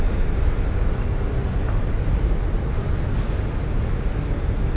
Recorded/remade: recorded